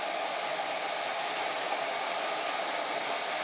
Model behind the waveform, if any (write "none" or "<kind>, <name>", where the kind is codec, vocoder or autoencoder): none